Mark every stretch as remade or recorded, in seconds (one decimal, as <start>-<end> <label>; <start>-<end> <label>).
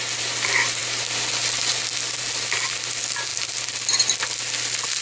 0.0-5.0 recorded